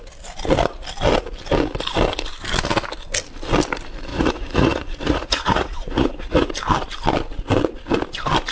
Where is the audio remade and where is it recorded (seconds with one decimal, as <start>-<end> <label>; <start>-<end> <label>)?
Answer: 0.0-4.1 recorded; 4.1-6.5 remade; 6.5-8.5 recorded